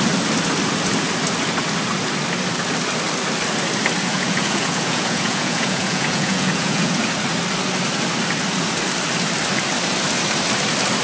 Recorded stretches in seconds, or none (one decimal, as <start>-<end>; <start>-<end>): 0.0-4.1; 6.9-11.0